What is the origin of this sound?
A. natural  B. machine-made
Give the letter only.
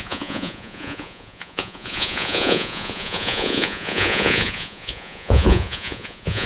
B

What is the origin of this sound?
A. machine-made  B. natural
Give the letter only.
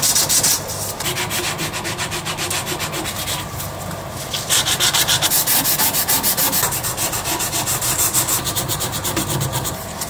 B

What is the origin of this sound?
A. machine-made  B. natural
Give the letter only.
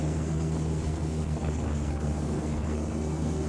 A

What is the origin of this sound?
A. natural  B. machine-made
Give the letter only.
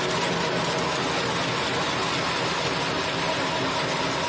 A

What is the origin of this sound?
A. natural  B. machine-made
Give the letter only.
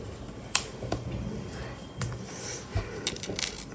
A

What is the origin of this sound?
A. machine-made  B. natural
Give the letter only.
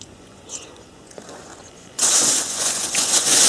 A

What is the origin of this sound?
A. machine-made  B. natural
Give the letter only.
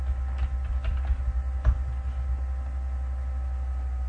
B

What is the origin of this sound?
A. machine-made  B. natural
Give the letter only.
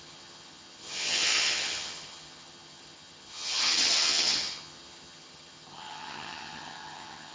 A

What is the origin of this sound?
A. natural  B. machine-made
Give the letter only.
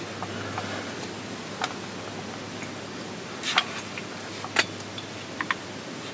A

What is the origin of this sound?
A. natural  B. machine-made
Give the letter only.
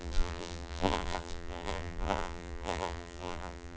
B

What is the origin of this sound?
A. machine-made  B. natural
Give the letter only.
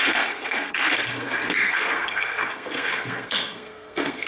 A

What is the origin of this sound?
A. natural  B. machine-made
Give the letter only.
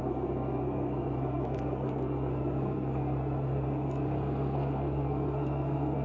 B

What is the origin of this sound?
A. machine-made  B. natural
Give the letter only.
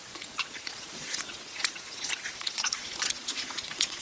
A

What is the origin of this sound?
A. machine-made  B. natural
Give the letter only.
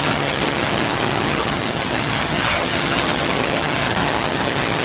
A